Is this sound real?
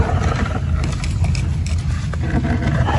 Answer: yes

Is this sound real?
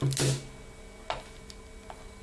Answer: yes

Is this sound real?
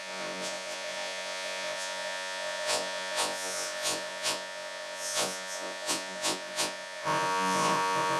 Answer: no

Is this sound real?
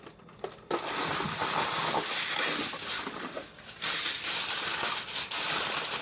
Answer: yes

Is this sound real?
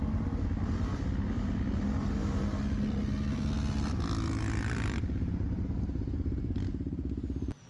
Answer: yes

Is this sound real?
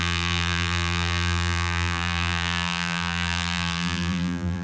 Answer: no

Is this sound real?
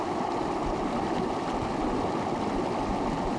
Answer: yes